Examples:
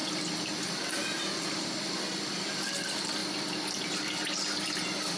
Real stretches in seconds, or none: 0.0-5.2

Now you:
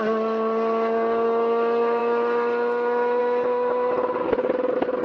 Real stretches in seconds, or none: 0.0-5.0

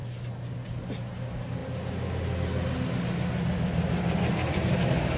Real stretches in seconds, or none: 0.0-5.2

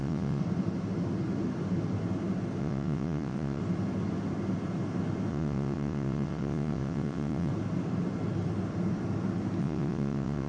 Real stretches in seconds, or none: 0.4-2.6; 3.6-5.3; 7.5-9.6

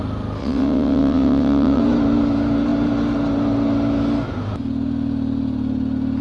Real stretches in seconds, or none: 0.0-0.4; 1.8-6.2

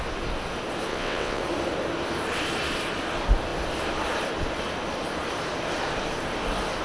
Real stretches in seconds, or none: 0.0-0.9; 1.4-6.8

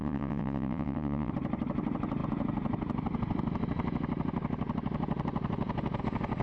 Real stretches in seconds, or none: 1.3-6.4

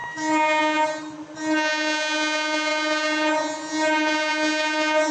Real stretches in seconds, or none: 0.0-5.1